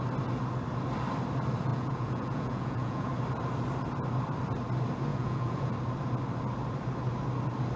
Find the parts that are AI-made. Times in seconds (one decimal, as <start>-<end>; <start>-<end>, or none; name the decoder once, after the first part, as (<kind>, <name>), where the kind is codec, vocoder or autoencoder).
1.7-3.2 (vocoder, Vocos); 5.1-5.7